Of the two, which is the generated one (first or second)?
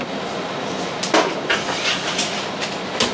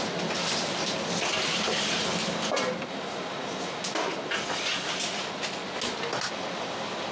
first